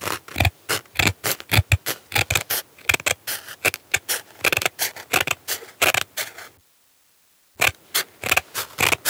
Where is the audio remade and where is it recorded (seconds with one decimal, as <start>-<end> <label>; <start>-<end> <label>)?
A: 0.0-9.1 recorded